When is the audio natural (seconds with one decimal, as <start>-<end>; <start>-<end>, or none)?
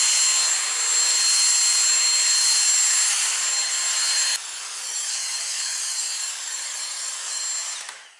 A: 0.0-4.3; 7.4-8.2